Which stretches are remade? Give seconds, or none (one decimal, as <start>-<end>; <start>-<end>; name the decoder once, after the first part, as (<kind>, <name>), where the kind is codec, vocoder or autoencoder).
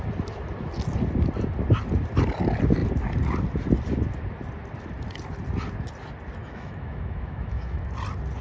6.4-7.9 (autoencoder, DAC-VAE)